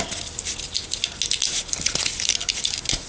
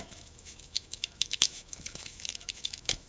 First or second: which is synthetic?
second